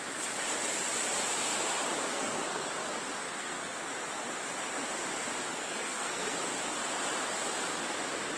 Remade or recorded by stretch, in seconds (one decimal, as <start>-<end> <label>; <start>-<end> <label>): 0.0-2.1 recorded; 2.1-2.7 remade; 2.7-3.2 recorded; 3.2-3.8 remade; 3.8-5.5 recorded; 5.5-6.4 remade; 6.4-8.4 recorded